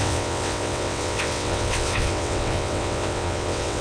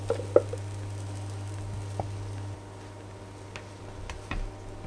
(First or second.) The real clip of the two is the second